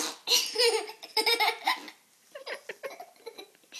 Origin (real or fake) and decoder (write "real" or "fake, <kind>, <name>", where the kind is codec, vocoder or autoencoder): real